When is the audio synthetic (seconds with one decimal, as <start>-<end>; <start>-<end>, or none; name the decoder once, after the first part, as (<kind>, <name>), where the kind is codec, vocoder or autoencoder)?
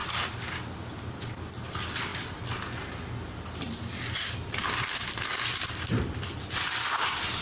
2.1-6.4 (vocoder, BigVGAN v2)